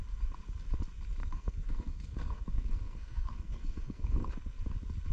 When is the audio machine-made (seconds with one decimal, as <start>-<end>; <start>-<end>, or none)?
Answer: 1.2-4.3